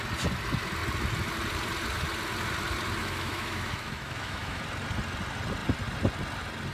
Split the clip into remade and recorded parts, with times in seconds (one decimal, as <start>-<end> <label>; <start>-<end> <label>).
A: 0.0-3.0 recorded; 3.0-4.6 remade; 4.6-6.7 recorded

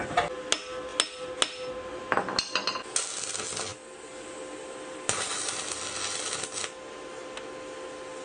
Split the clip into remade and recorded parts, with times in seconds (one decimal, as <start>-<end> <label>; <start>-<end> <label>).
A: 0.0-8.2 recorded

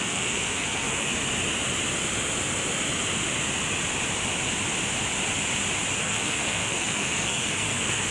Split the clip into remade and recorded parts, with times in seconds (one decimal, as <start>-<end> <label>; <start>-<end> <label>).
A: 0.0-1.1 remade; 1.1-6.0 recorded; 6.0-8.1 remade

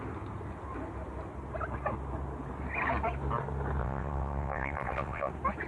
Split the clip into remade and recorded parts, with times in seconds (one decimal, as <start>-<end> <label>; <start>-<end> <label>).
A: 0.0-3.8 recorded; 3.8-5.3 remade; 5.3-5.7 recorded